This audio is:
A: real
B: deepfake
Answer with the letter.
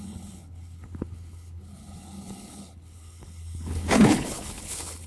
B